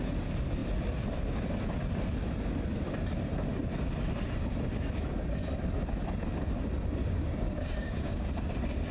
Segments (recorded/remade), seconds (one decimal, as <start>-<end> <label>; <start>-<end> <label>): 0.0-7.0 recorded; 7.0-8.3 remade; 8.3-8.9 recorded